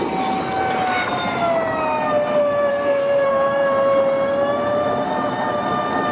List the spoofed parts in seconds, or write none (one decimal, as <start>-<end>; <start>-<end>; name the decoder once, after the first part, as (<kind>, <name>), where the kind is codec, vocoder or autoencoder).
2.7-3.3 (codec, SNAC)